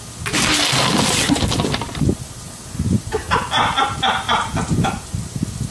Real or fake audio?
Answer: real